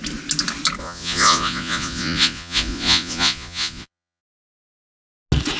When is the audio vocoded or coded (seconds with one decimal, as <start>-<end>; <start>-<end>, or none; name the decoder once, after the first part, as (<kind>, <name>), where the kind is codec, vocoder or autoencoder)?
0.8-4.2 (vocoder, Vocos)

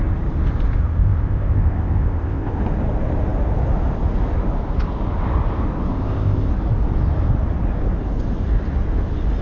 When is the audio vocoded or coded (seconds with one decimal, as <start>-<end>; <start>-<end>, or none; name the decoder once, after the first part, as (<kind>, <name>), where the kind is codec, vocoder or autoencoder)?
0.8-2.6 (codec, ZipCodec); 5.9-6.5

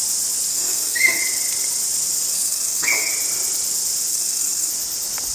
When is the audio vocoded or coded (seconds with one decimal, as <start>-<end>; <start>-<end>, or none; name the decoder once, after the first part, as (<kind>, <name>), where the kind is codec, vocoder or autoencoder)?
0.5-1.2 (codec, SNAC); 2.3-3.1; 4.1-4.7

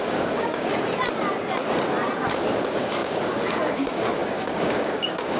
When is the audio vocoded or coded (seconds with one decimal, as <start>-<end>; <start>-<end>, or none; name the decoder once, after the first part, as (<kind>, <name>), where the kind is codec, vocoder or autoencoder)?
0.0-0.7 (codec, DAC); 2.3-5.4

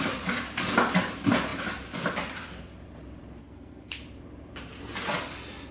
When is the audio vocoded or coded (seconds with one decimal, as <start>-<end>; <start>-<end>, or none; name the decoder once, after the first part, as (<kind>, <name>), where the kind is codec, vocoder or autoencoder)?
3.4-4.0 (codec, SNAC)

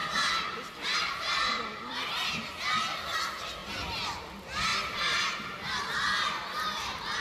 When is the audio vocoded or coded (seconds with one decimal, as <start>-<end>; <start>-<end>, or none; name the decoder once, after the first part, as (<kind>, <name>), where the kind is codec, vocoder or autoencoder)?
0.0-2.3 (vocoder, BigVGAN v2); 4.7-7.2

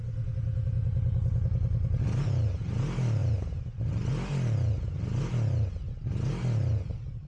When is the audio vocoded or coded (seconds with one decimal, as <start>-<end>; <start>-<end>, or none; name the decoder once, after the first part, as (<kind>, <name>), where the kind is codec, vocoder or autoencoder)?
none